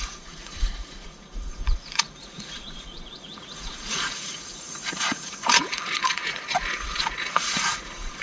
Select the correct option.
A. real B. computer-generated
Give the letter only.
B